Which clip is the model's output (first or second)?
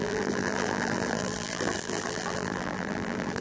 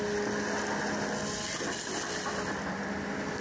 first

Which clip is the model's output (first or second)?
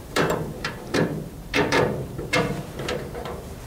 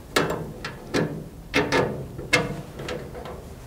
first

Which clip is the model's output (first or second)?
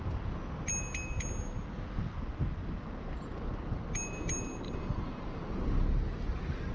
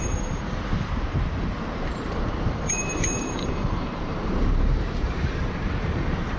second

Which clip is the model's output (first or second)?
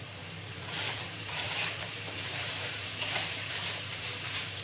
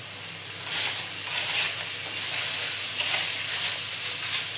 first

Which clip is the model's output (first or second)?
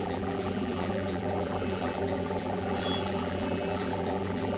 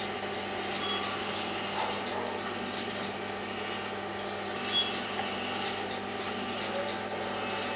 first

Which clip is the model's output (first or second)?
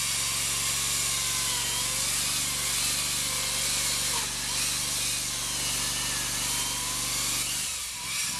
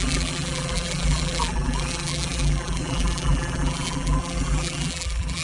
second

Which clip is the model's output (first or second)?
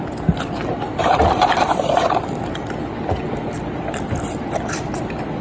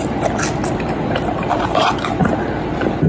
first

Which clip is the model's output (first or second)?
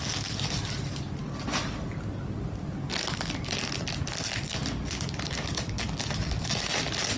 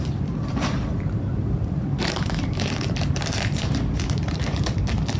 second